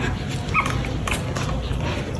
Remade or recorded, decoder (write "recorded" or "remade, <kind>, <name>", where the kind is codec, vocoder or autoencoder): recorded